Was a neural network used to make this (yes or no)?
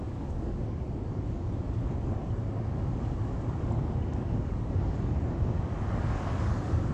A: yes